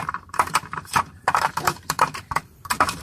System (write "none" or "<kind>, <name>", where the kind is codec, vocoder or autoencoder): vocoder, BigVGAN v2